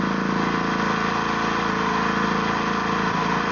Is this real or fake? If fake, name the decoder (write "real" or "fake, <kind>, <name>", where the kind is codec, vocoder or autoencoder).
real